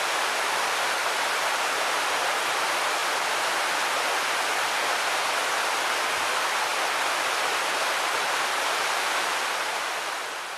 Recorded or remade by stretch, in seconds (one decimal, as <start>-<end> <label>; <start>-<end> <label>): 0.0-10.6 recorded